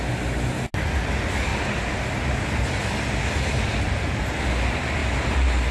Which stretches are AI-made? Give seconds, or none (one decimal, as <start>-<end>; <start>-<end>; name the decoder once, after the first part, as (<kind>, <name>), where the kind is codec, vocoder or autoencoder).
none